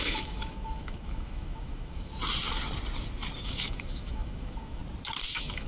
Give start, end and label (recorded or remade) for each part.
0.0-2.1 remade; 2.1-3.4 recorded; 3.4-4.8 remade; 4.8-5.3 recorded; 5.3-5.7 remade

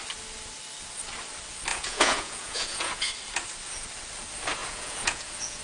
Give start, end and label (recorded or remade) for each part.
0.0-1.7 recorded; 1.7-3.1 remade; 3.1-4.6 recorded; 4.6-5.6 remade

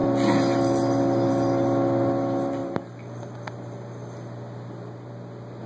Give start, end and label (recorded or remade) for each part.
0.0-5.7 recorded

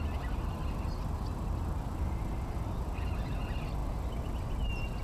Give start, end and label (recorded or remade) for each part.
0.0-5.0 recorded

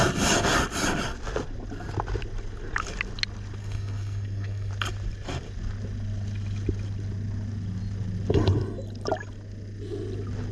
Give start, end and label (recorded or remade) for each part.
0.0-3.6 recorded; 3.6-4.7 remade; 4.7-10.5 recorded

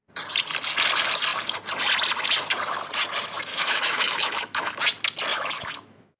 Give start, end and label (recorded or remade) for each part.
0.0-3.5 recorded; 3.5-4.7 remade; 4.7-5.3 recorded; 5.3-6.2 remade